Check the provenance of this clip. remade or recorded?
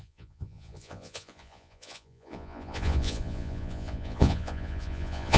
remade